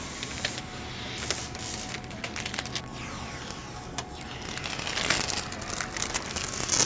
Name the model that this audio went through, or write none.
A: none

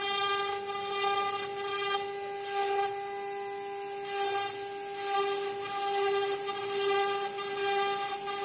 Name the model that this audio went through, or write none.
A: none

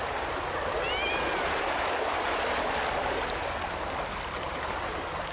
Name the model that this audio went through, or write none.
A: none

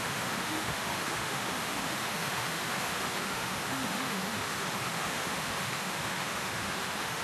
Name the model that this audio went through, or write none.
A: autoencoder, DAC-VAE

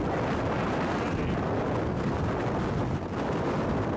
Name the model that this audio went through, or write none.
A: none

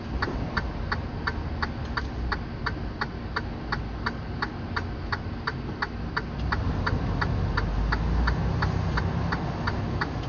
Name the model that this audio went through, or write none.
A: none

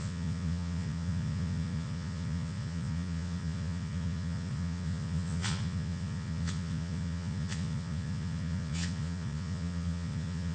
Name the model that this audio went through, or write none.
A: vocoder, Vocos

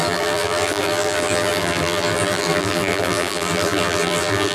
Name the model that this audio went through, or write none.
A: vocoder, BigVGAN v2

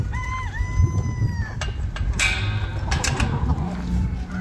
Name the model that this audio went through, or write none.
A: none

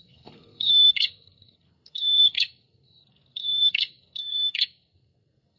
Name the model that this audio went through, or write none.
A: codec, SNAC